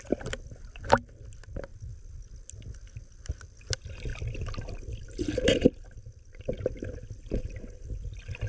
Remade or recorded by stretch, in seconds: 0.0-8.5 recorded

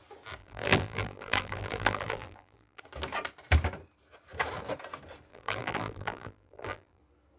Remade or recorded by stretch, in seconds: 0.0-0.4 recorded; 0.4-2.8 remade; 2.8-5.3 recorded; 5.3-7.0 remade; 7.0-7.4 recorded